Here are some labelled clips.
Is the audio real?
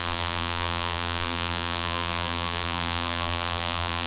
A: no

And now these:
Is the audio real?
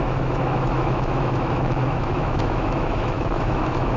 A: no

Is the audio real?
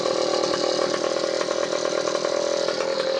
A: yes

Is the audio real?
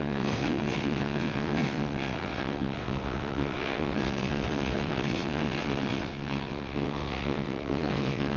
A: no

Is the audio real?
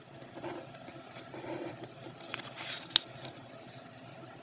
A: yes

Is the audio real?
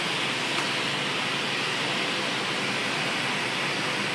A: yes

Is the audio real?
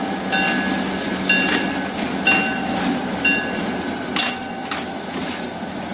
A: yes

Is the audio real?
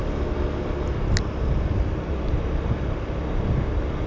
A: yes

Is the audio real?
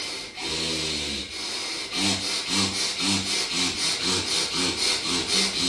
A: yes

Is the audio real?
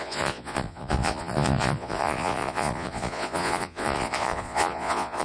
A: no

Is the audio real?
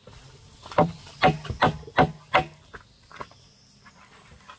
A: yes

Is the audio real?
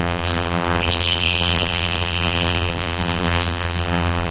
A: no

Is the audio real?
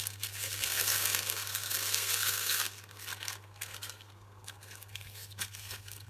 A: no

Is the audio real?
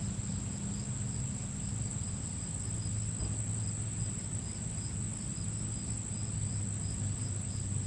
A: yes